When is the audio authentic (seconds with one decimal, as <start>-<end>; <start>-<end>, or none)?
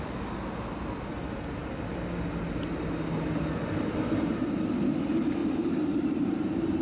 0.0-5.4